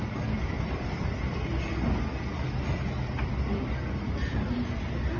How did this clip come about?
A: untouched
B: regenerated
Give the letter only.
A